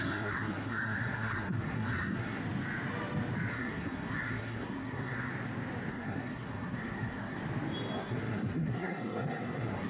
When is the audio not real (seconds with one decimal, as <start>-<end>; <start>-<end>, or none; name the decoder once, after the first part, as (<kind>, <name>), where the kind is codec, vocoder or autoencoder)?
0.0-2.4 (codec, SNAC); 3.5-5.3; 5.9-7.4; 8.0-9.9